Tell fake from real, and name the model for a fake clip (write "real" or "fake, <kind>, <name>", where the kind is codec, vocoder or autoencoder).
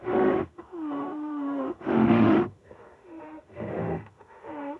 fake, autoencoder, DAC-VAE